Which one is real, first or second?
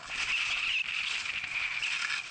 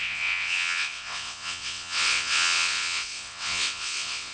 first